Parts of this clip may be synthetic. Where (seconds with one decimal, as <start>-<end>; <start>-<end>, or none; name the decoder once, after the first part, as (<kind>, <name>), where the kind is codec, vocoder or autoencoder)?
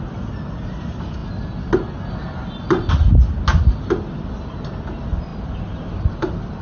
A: none